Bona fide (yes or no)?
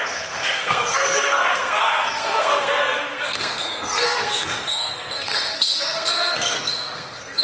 no